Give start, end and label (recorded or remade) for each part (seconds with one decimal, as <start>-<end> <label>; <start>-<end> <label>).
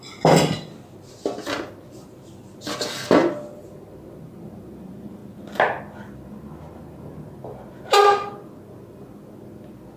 0.0-10.0 recorded